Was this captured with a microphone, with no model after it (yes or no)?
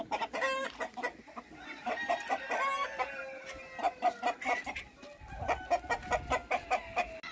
yes